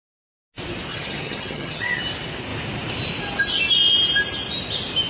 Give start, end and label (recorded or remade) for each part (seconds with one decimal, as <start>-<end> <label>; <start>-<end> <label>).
0.0-0.9 recorded; 0.9-2.0 remade; 2.0-5.1 recorded